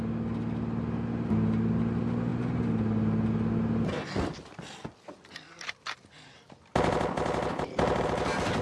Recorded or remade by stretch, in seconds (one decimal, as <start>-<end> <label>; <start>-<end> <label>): 0.0-8.6 recorded